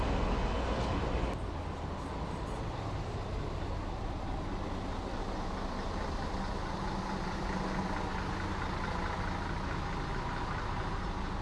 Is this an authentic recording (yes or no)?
yes